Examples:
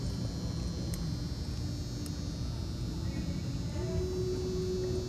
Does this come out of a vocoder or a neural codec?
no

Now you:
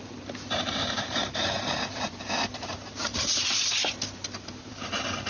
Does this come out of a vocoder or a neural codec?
yes